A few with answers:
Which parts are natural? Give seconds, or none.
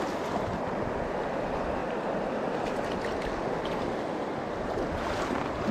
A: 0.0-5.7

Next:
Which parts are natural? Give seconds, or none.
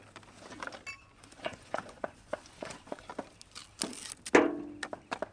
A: 0.0-1.0; 3.1-5.3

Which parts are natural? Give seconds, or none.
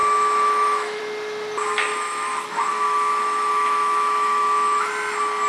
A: 1.0-1.9; 4.9-5.5